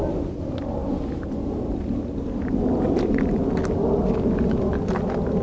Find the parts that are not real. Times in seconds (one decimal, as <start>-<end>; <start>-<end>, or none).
none